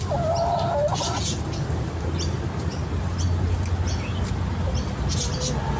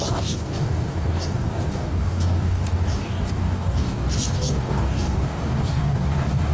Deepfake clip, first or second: second